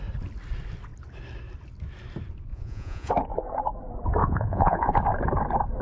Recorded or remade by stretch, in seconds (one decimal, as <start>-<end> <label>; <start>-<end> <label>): 0.0-2.5 recorded; 2.5-3.1 remade; 3.1-4.2 recorded; 4.2-5.0 remade; 5.0-5.8 recorded